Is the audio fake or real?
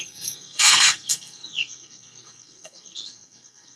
fake